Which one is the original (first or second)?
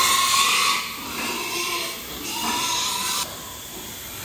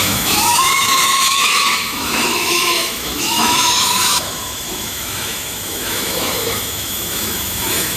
first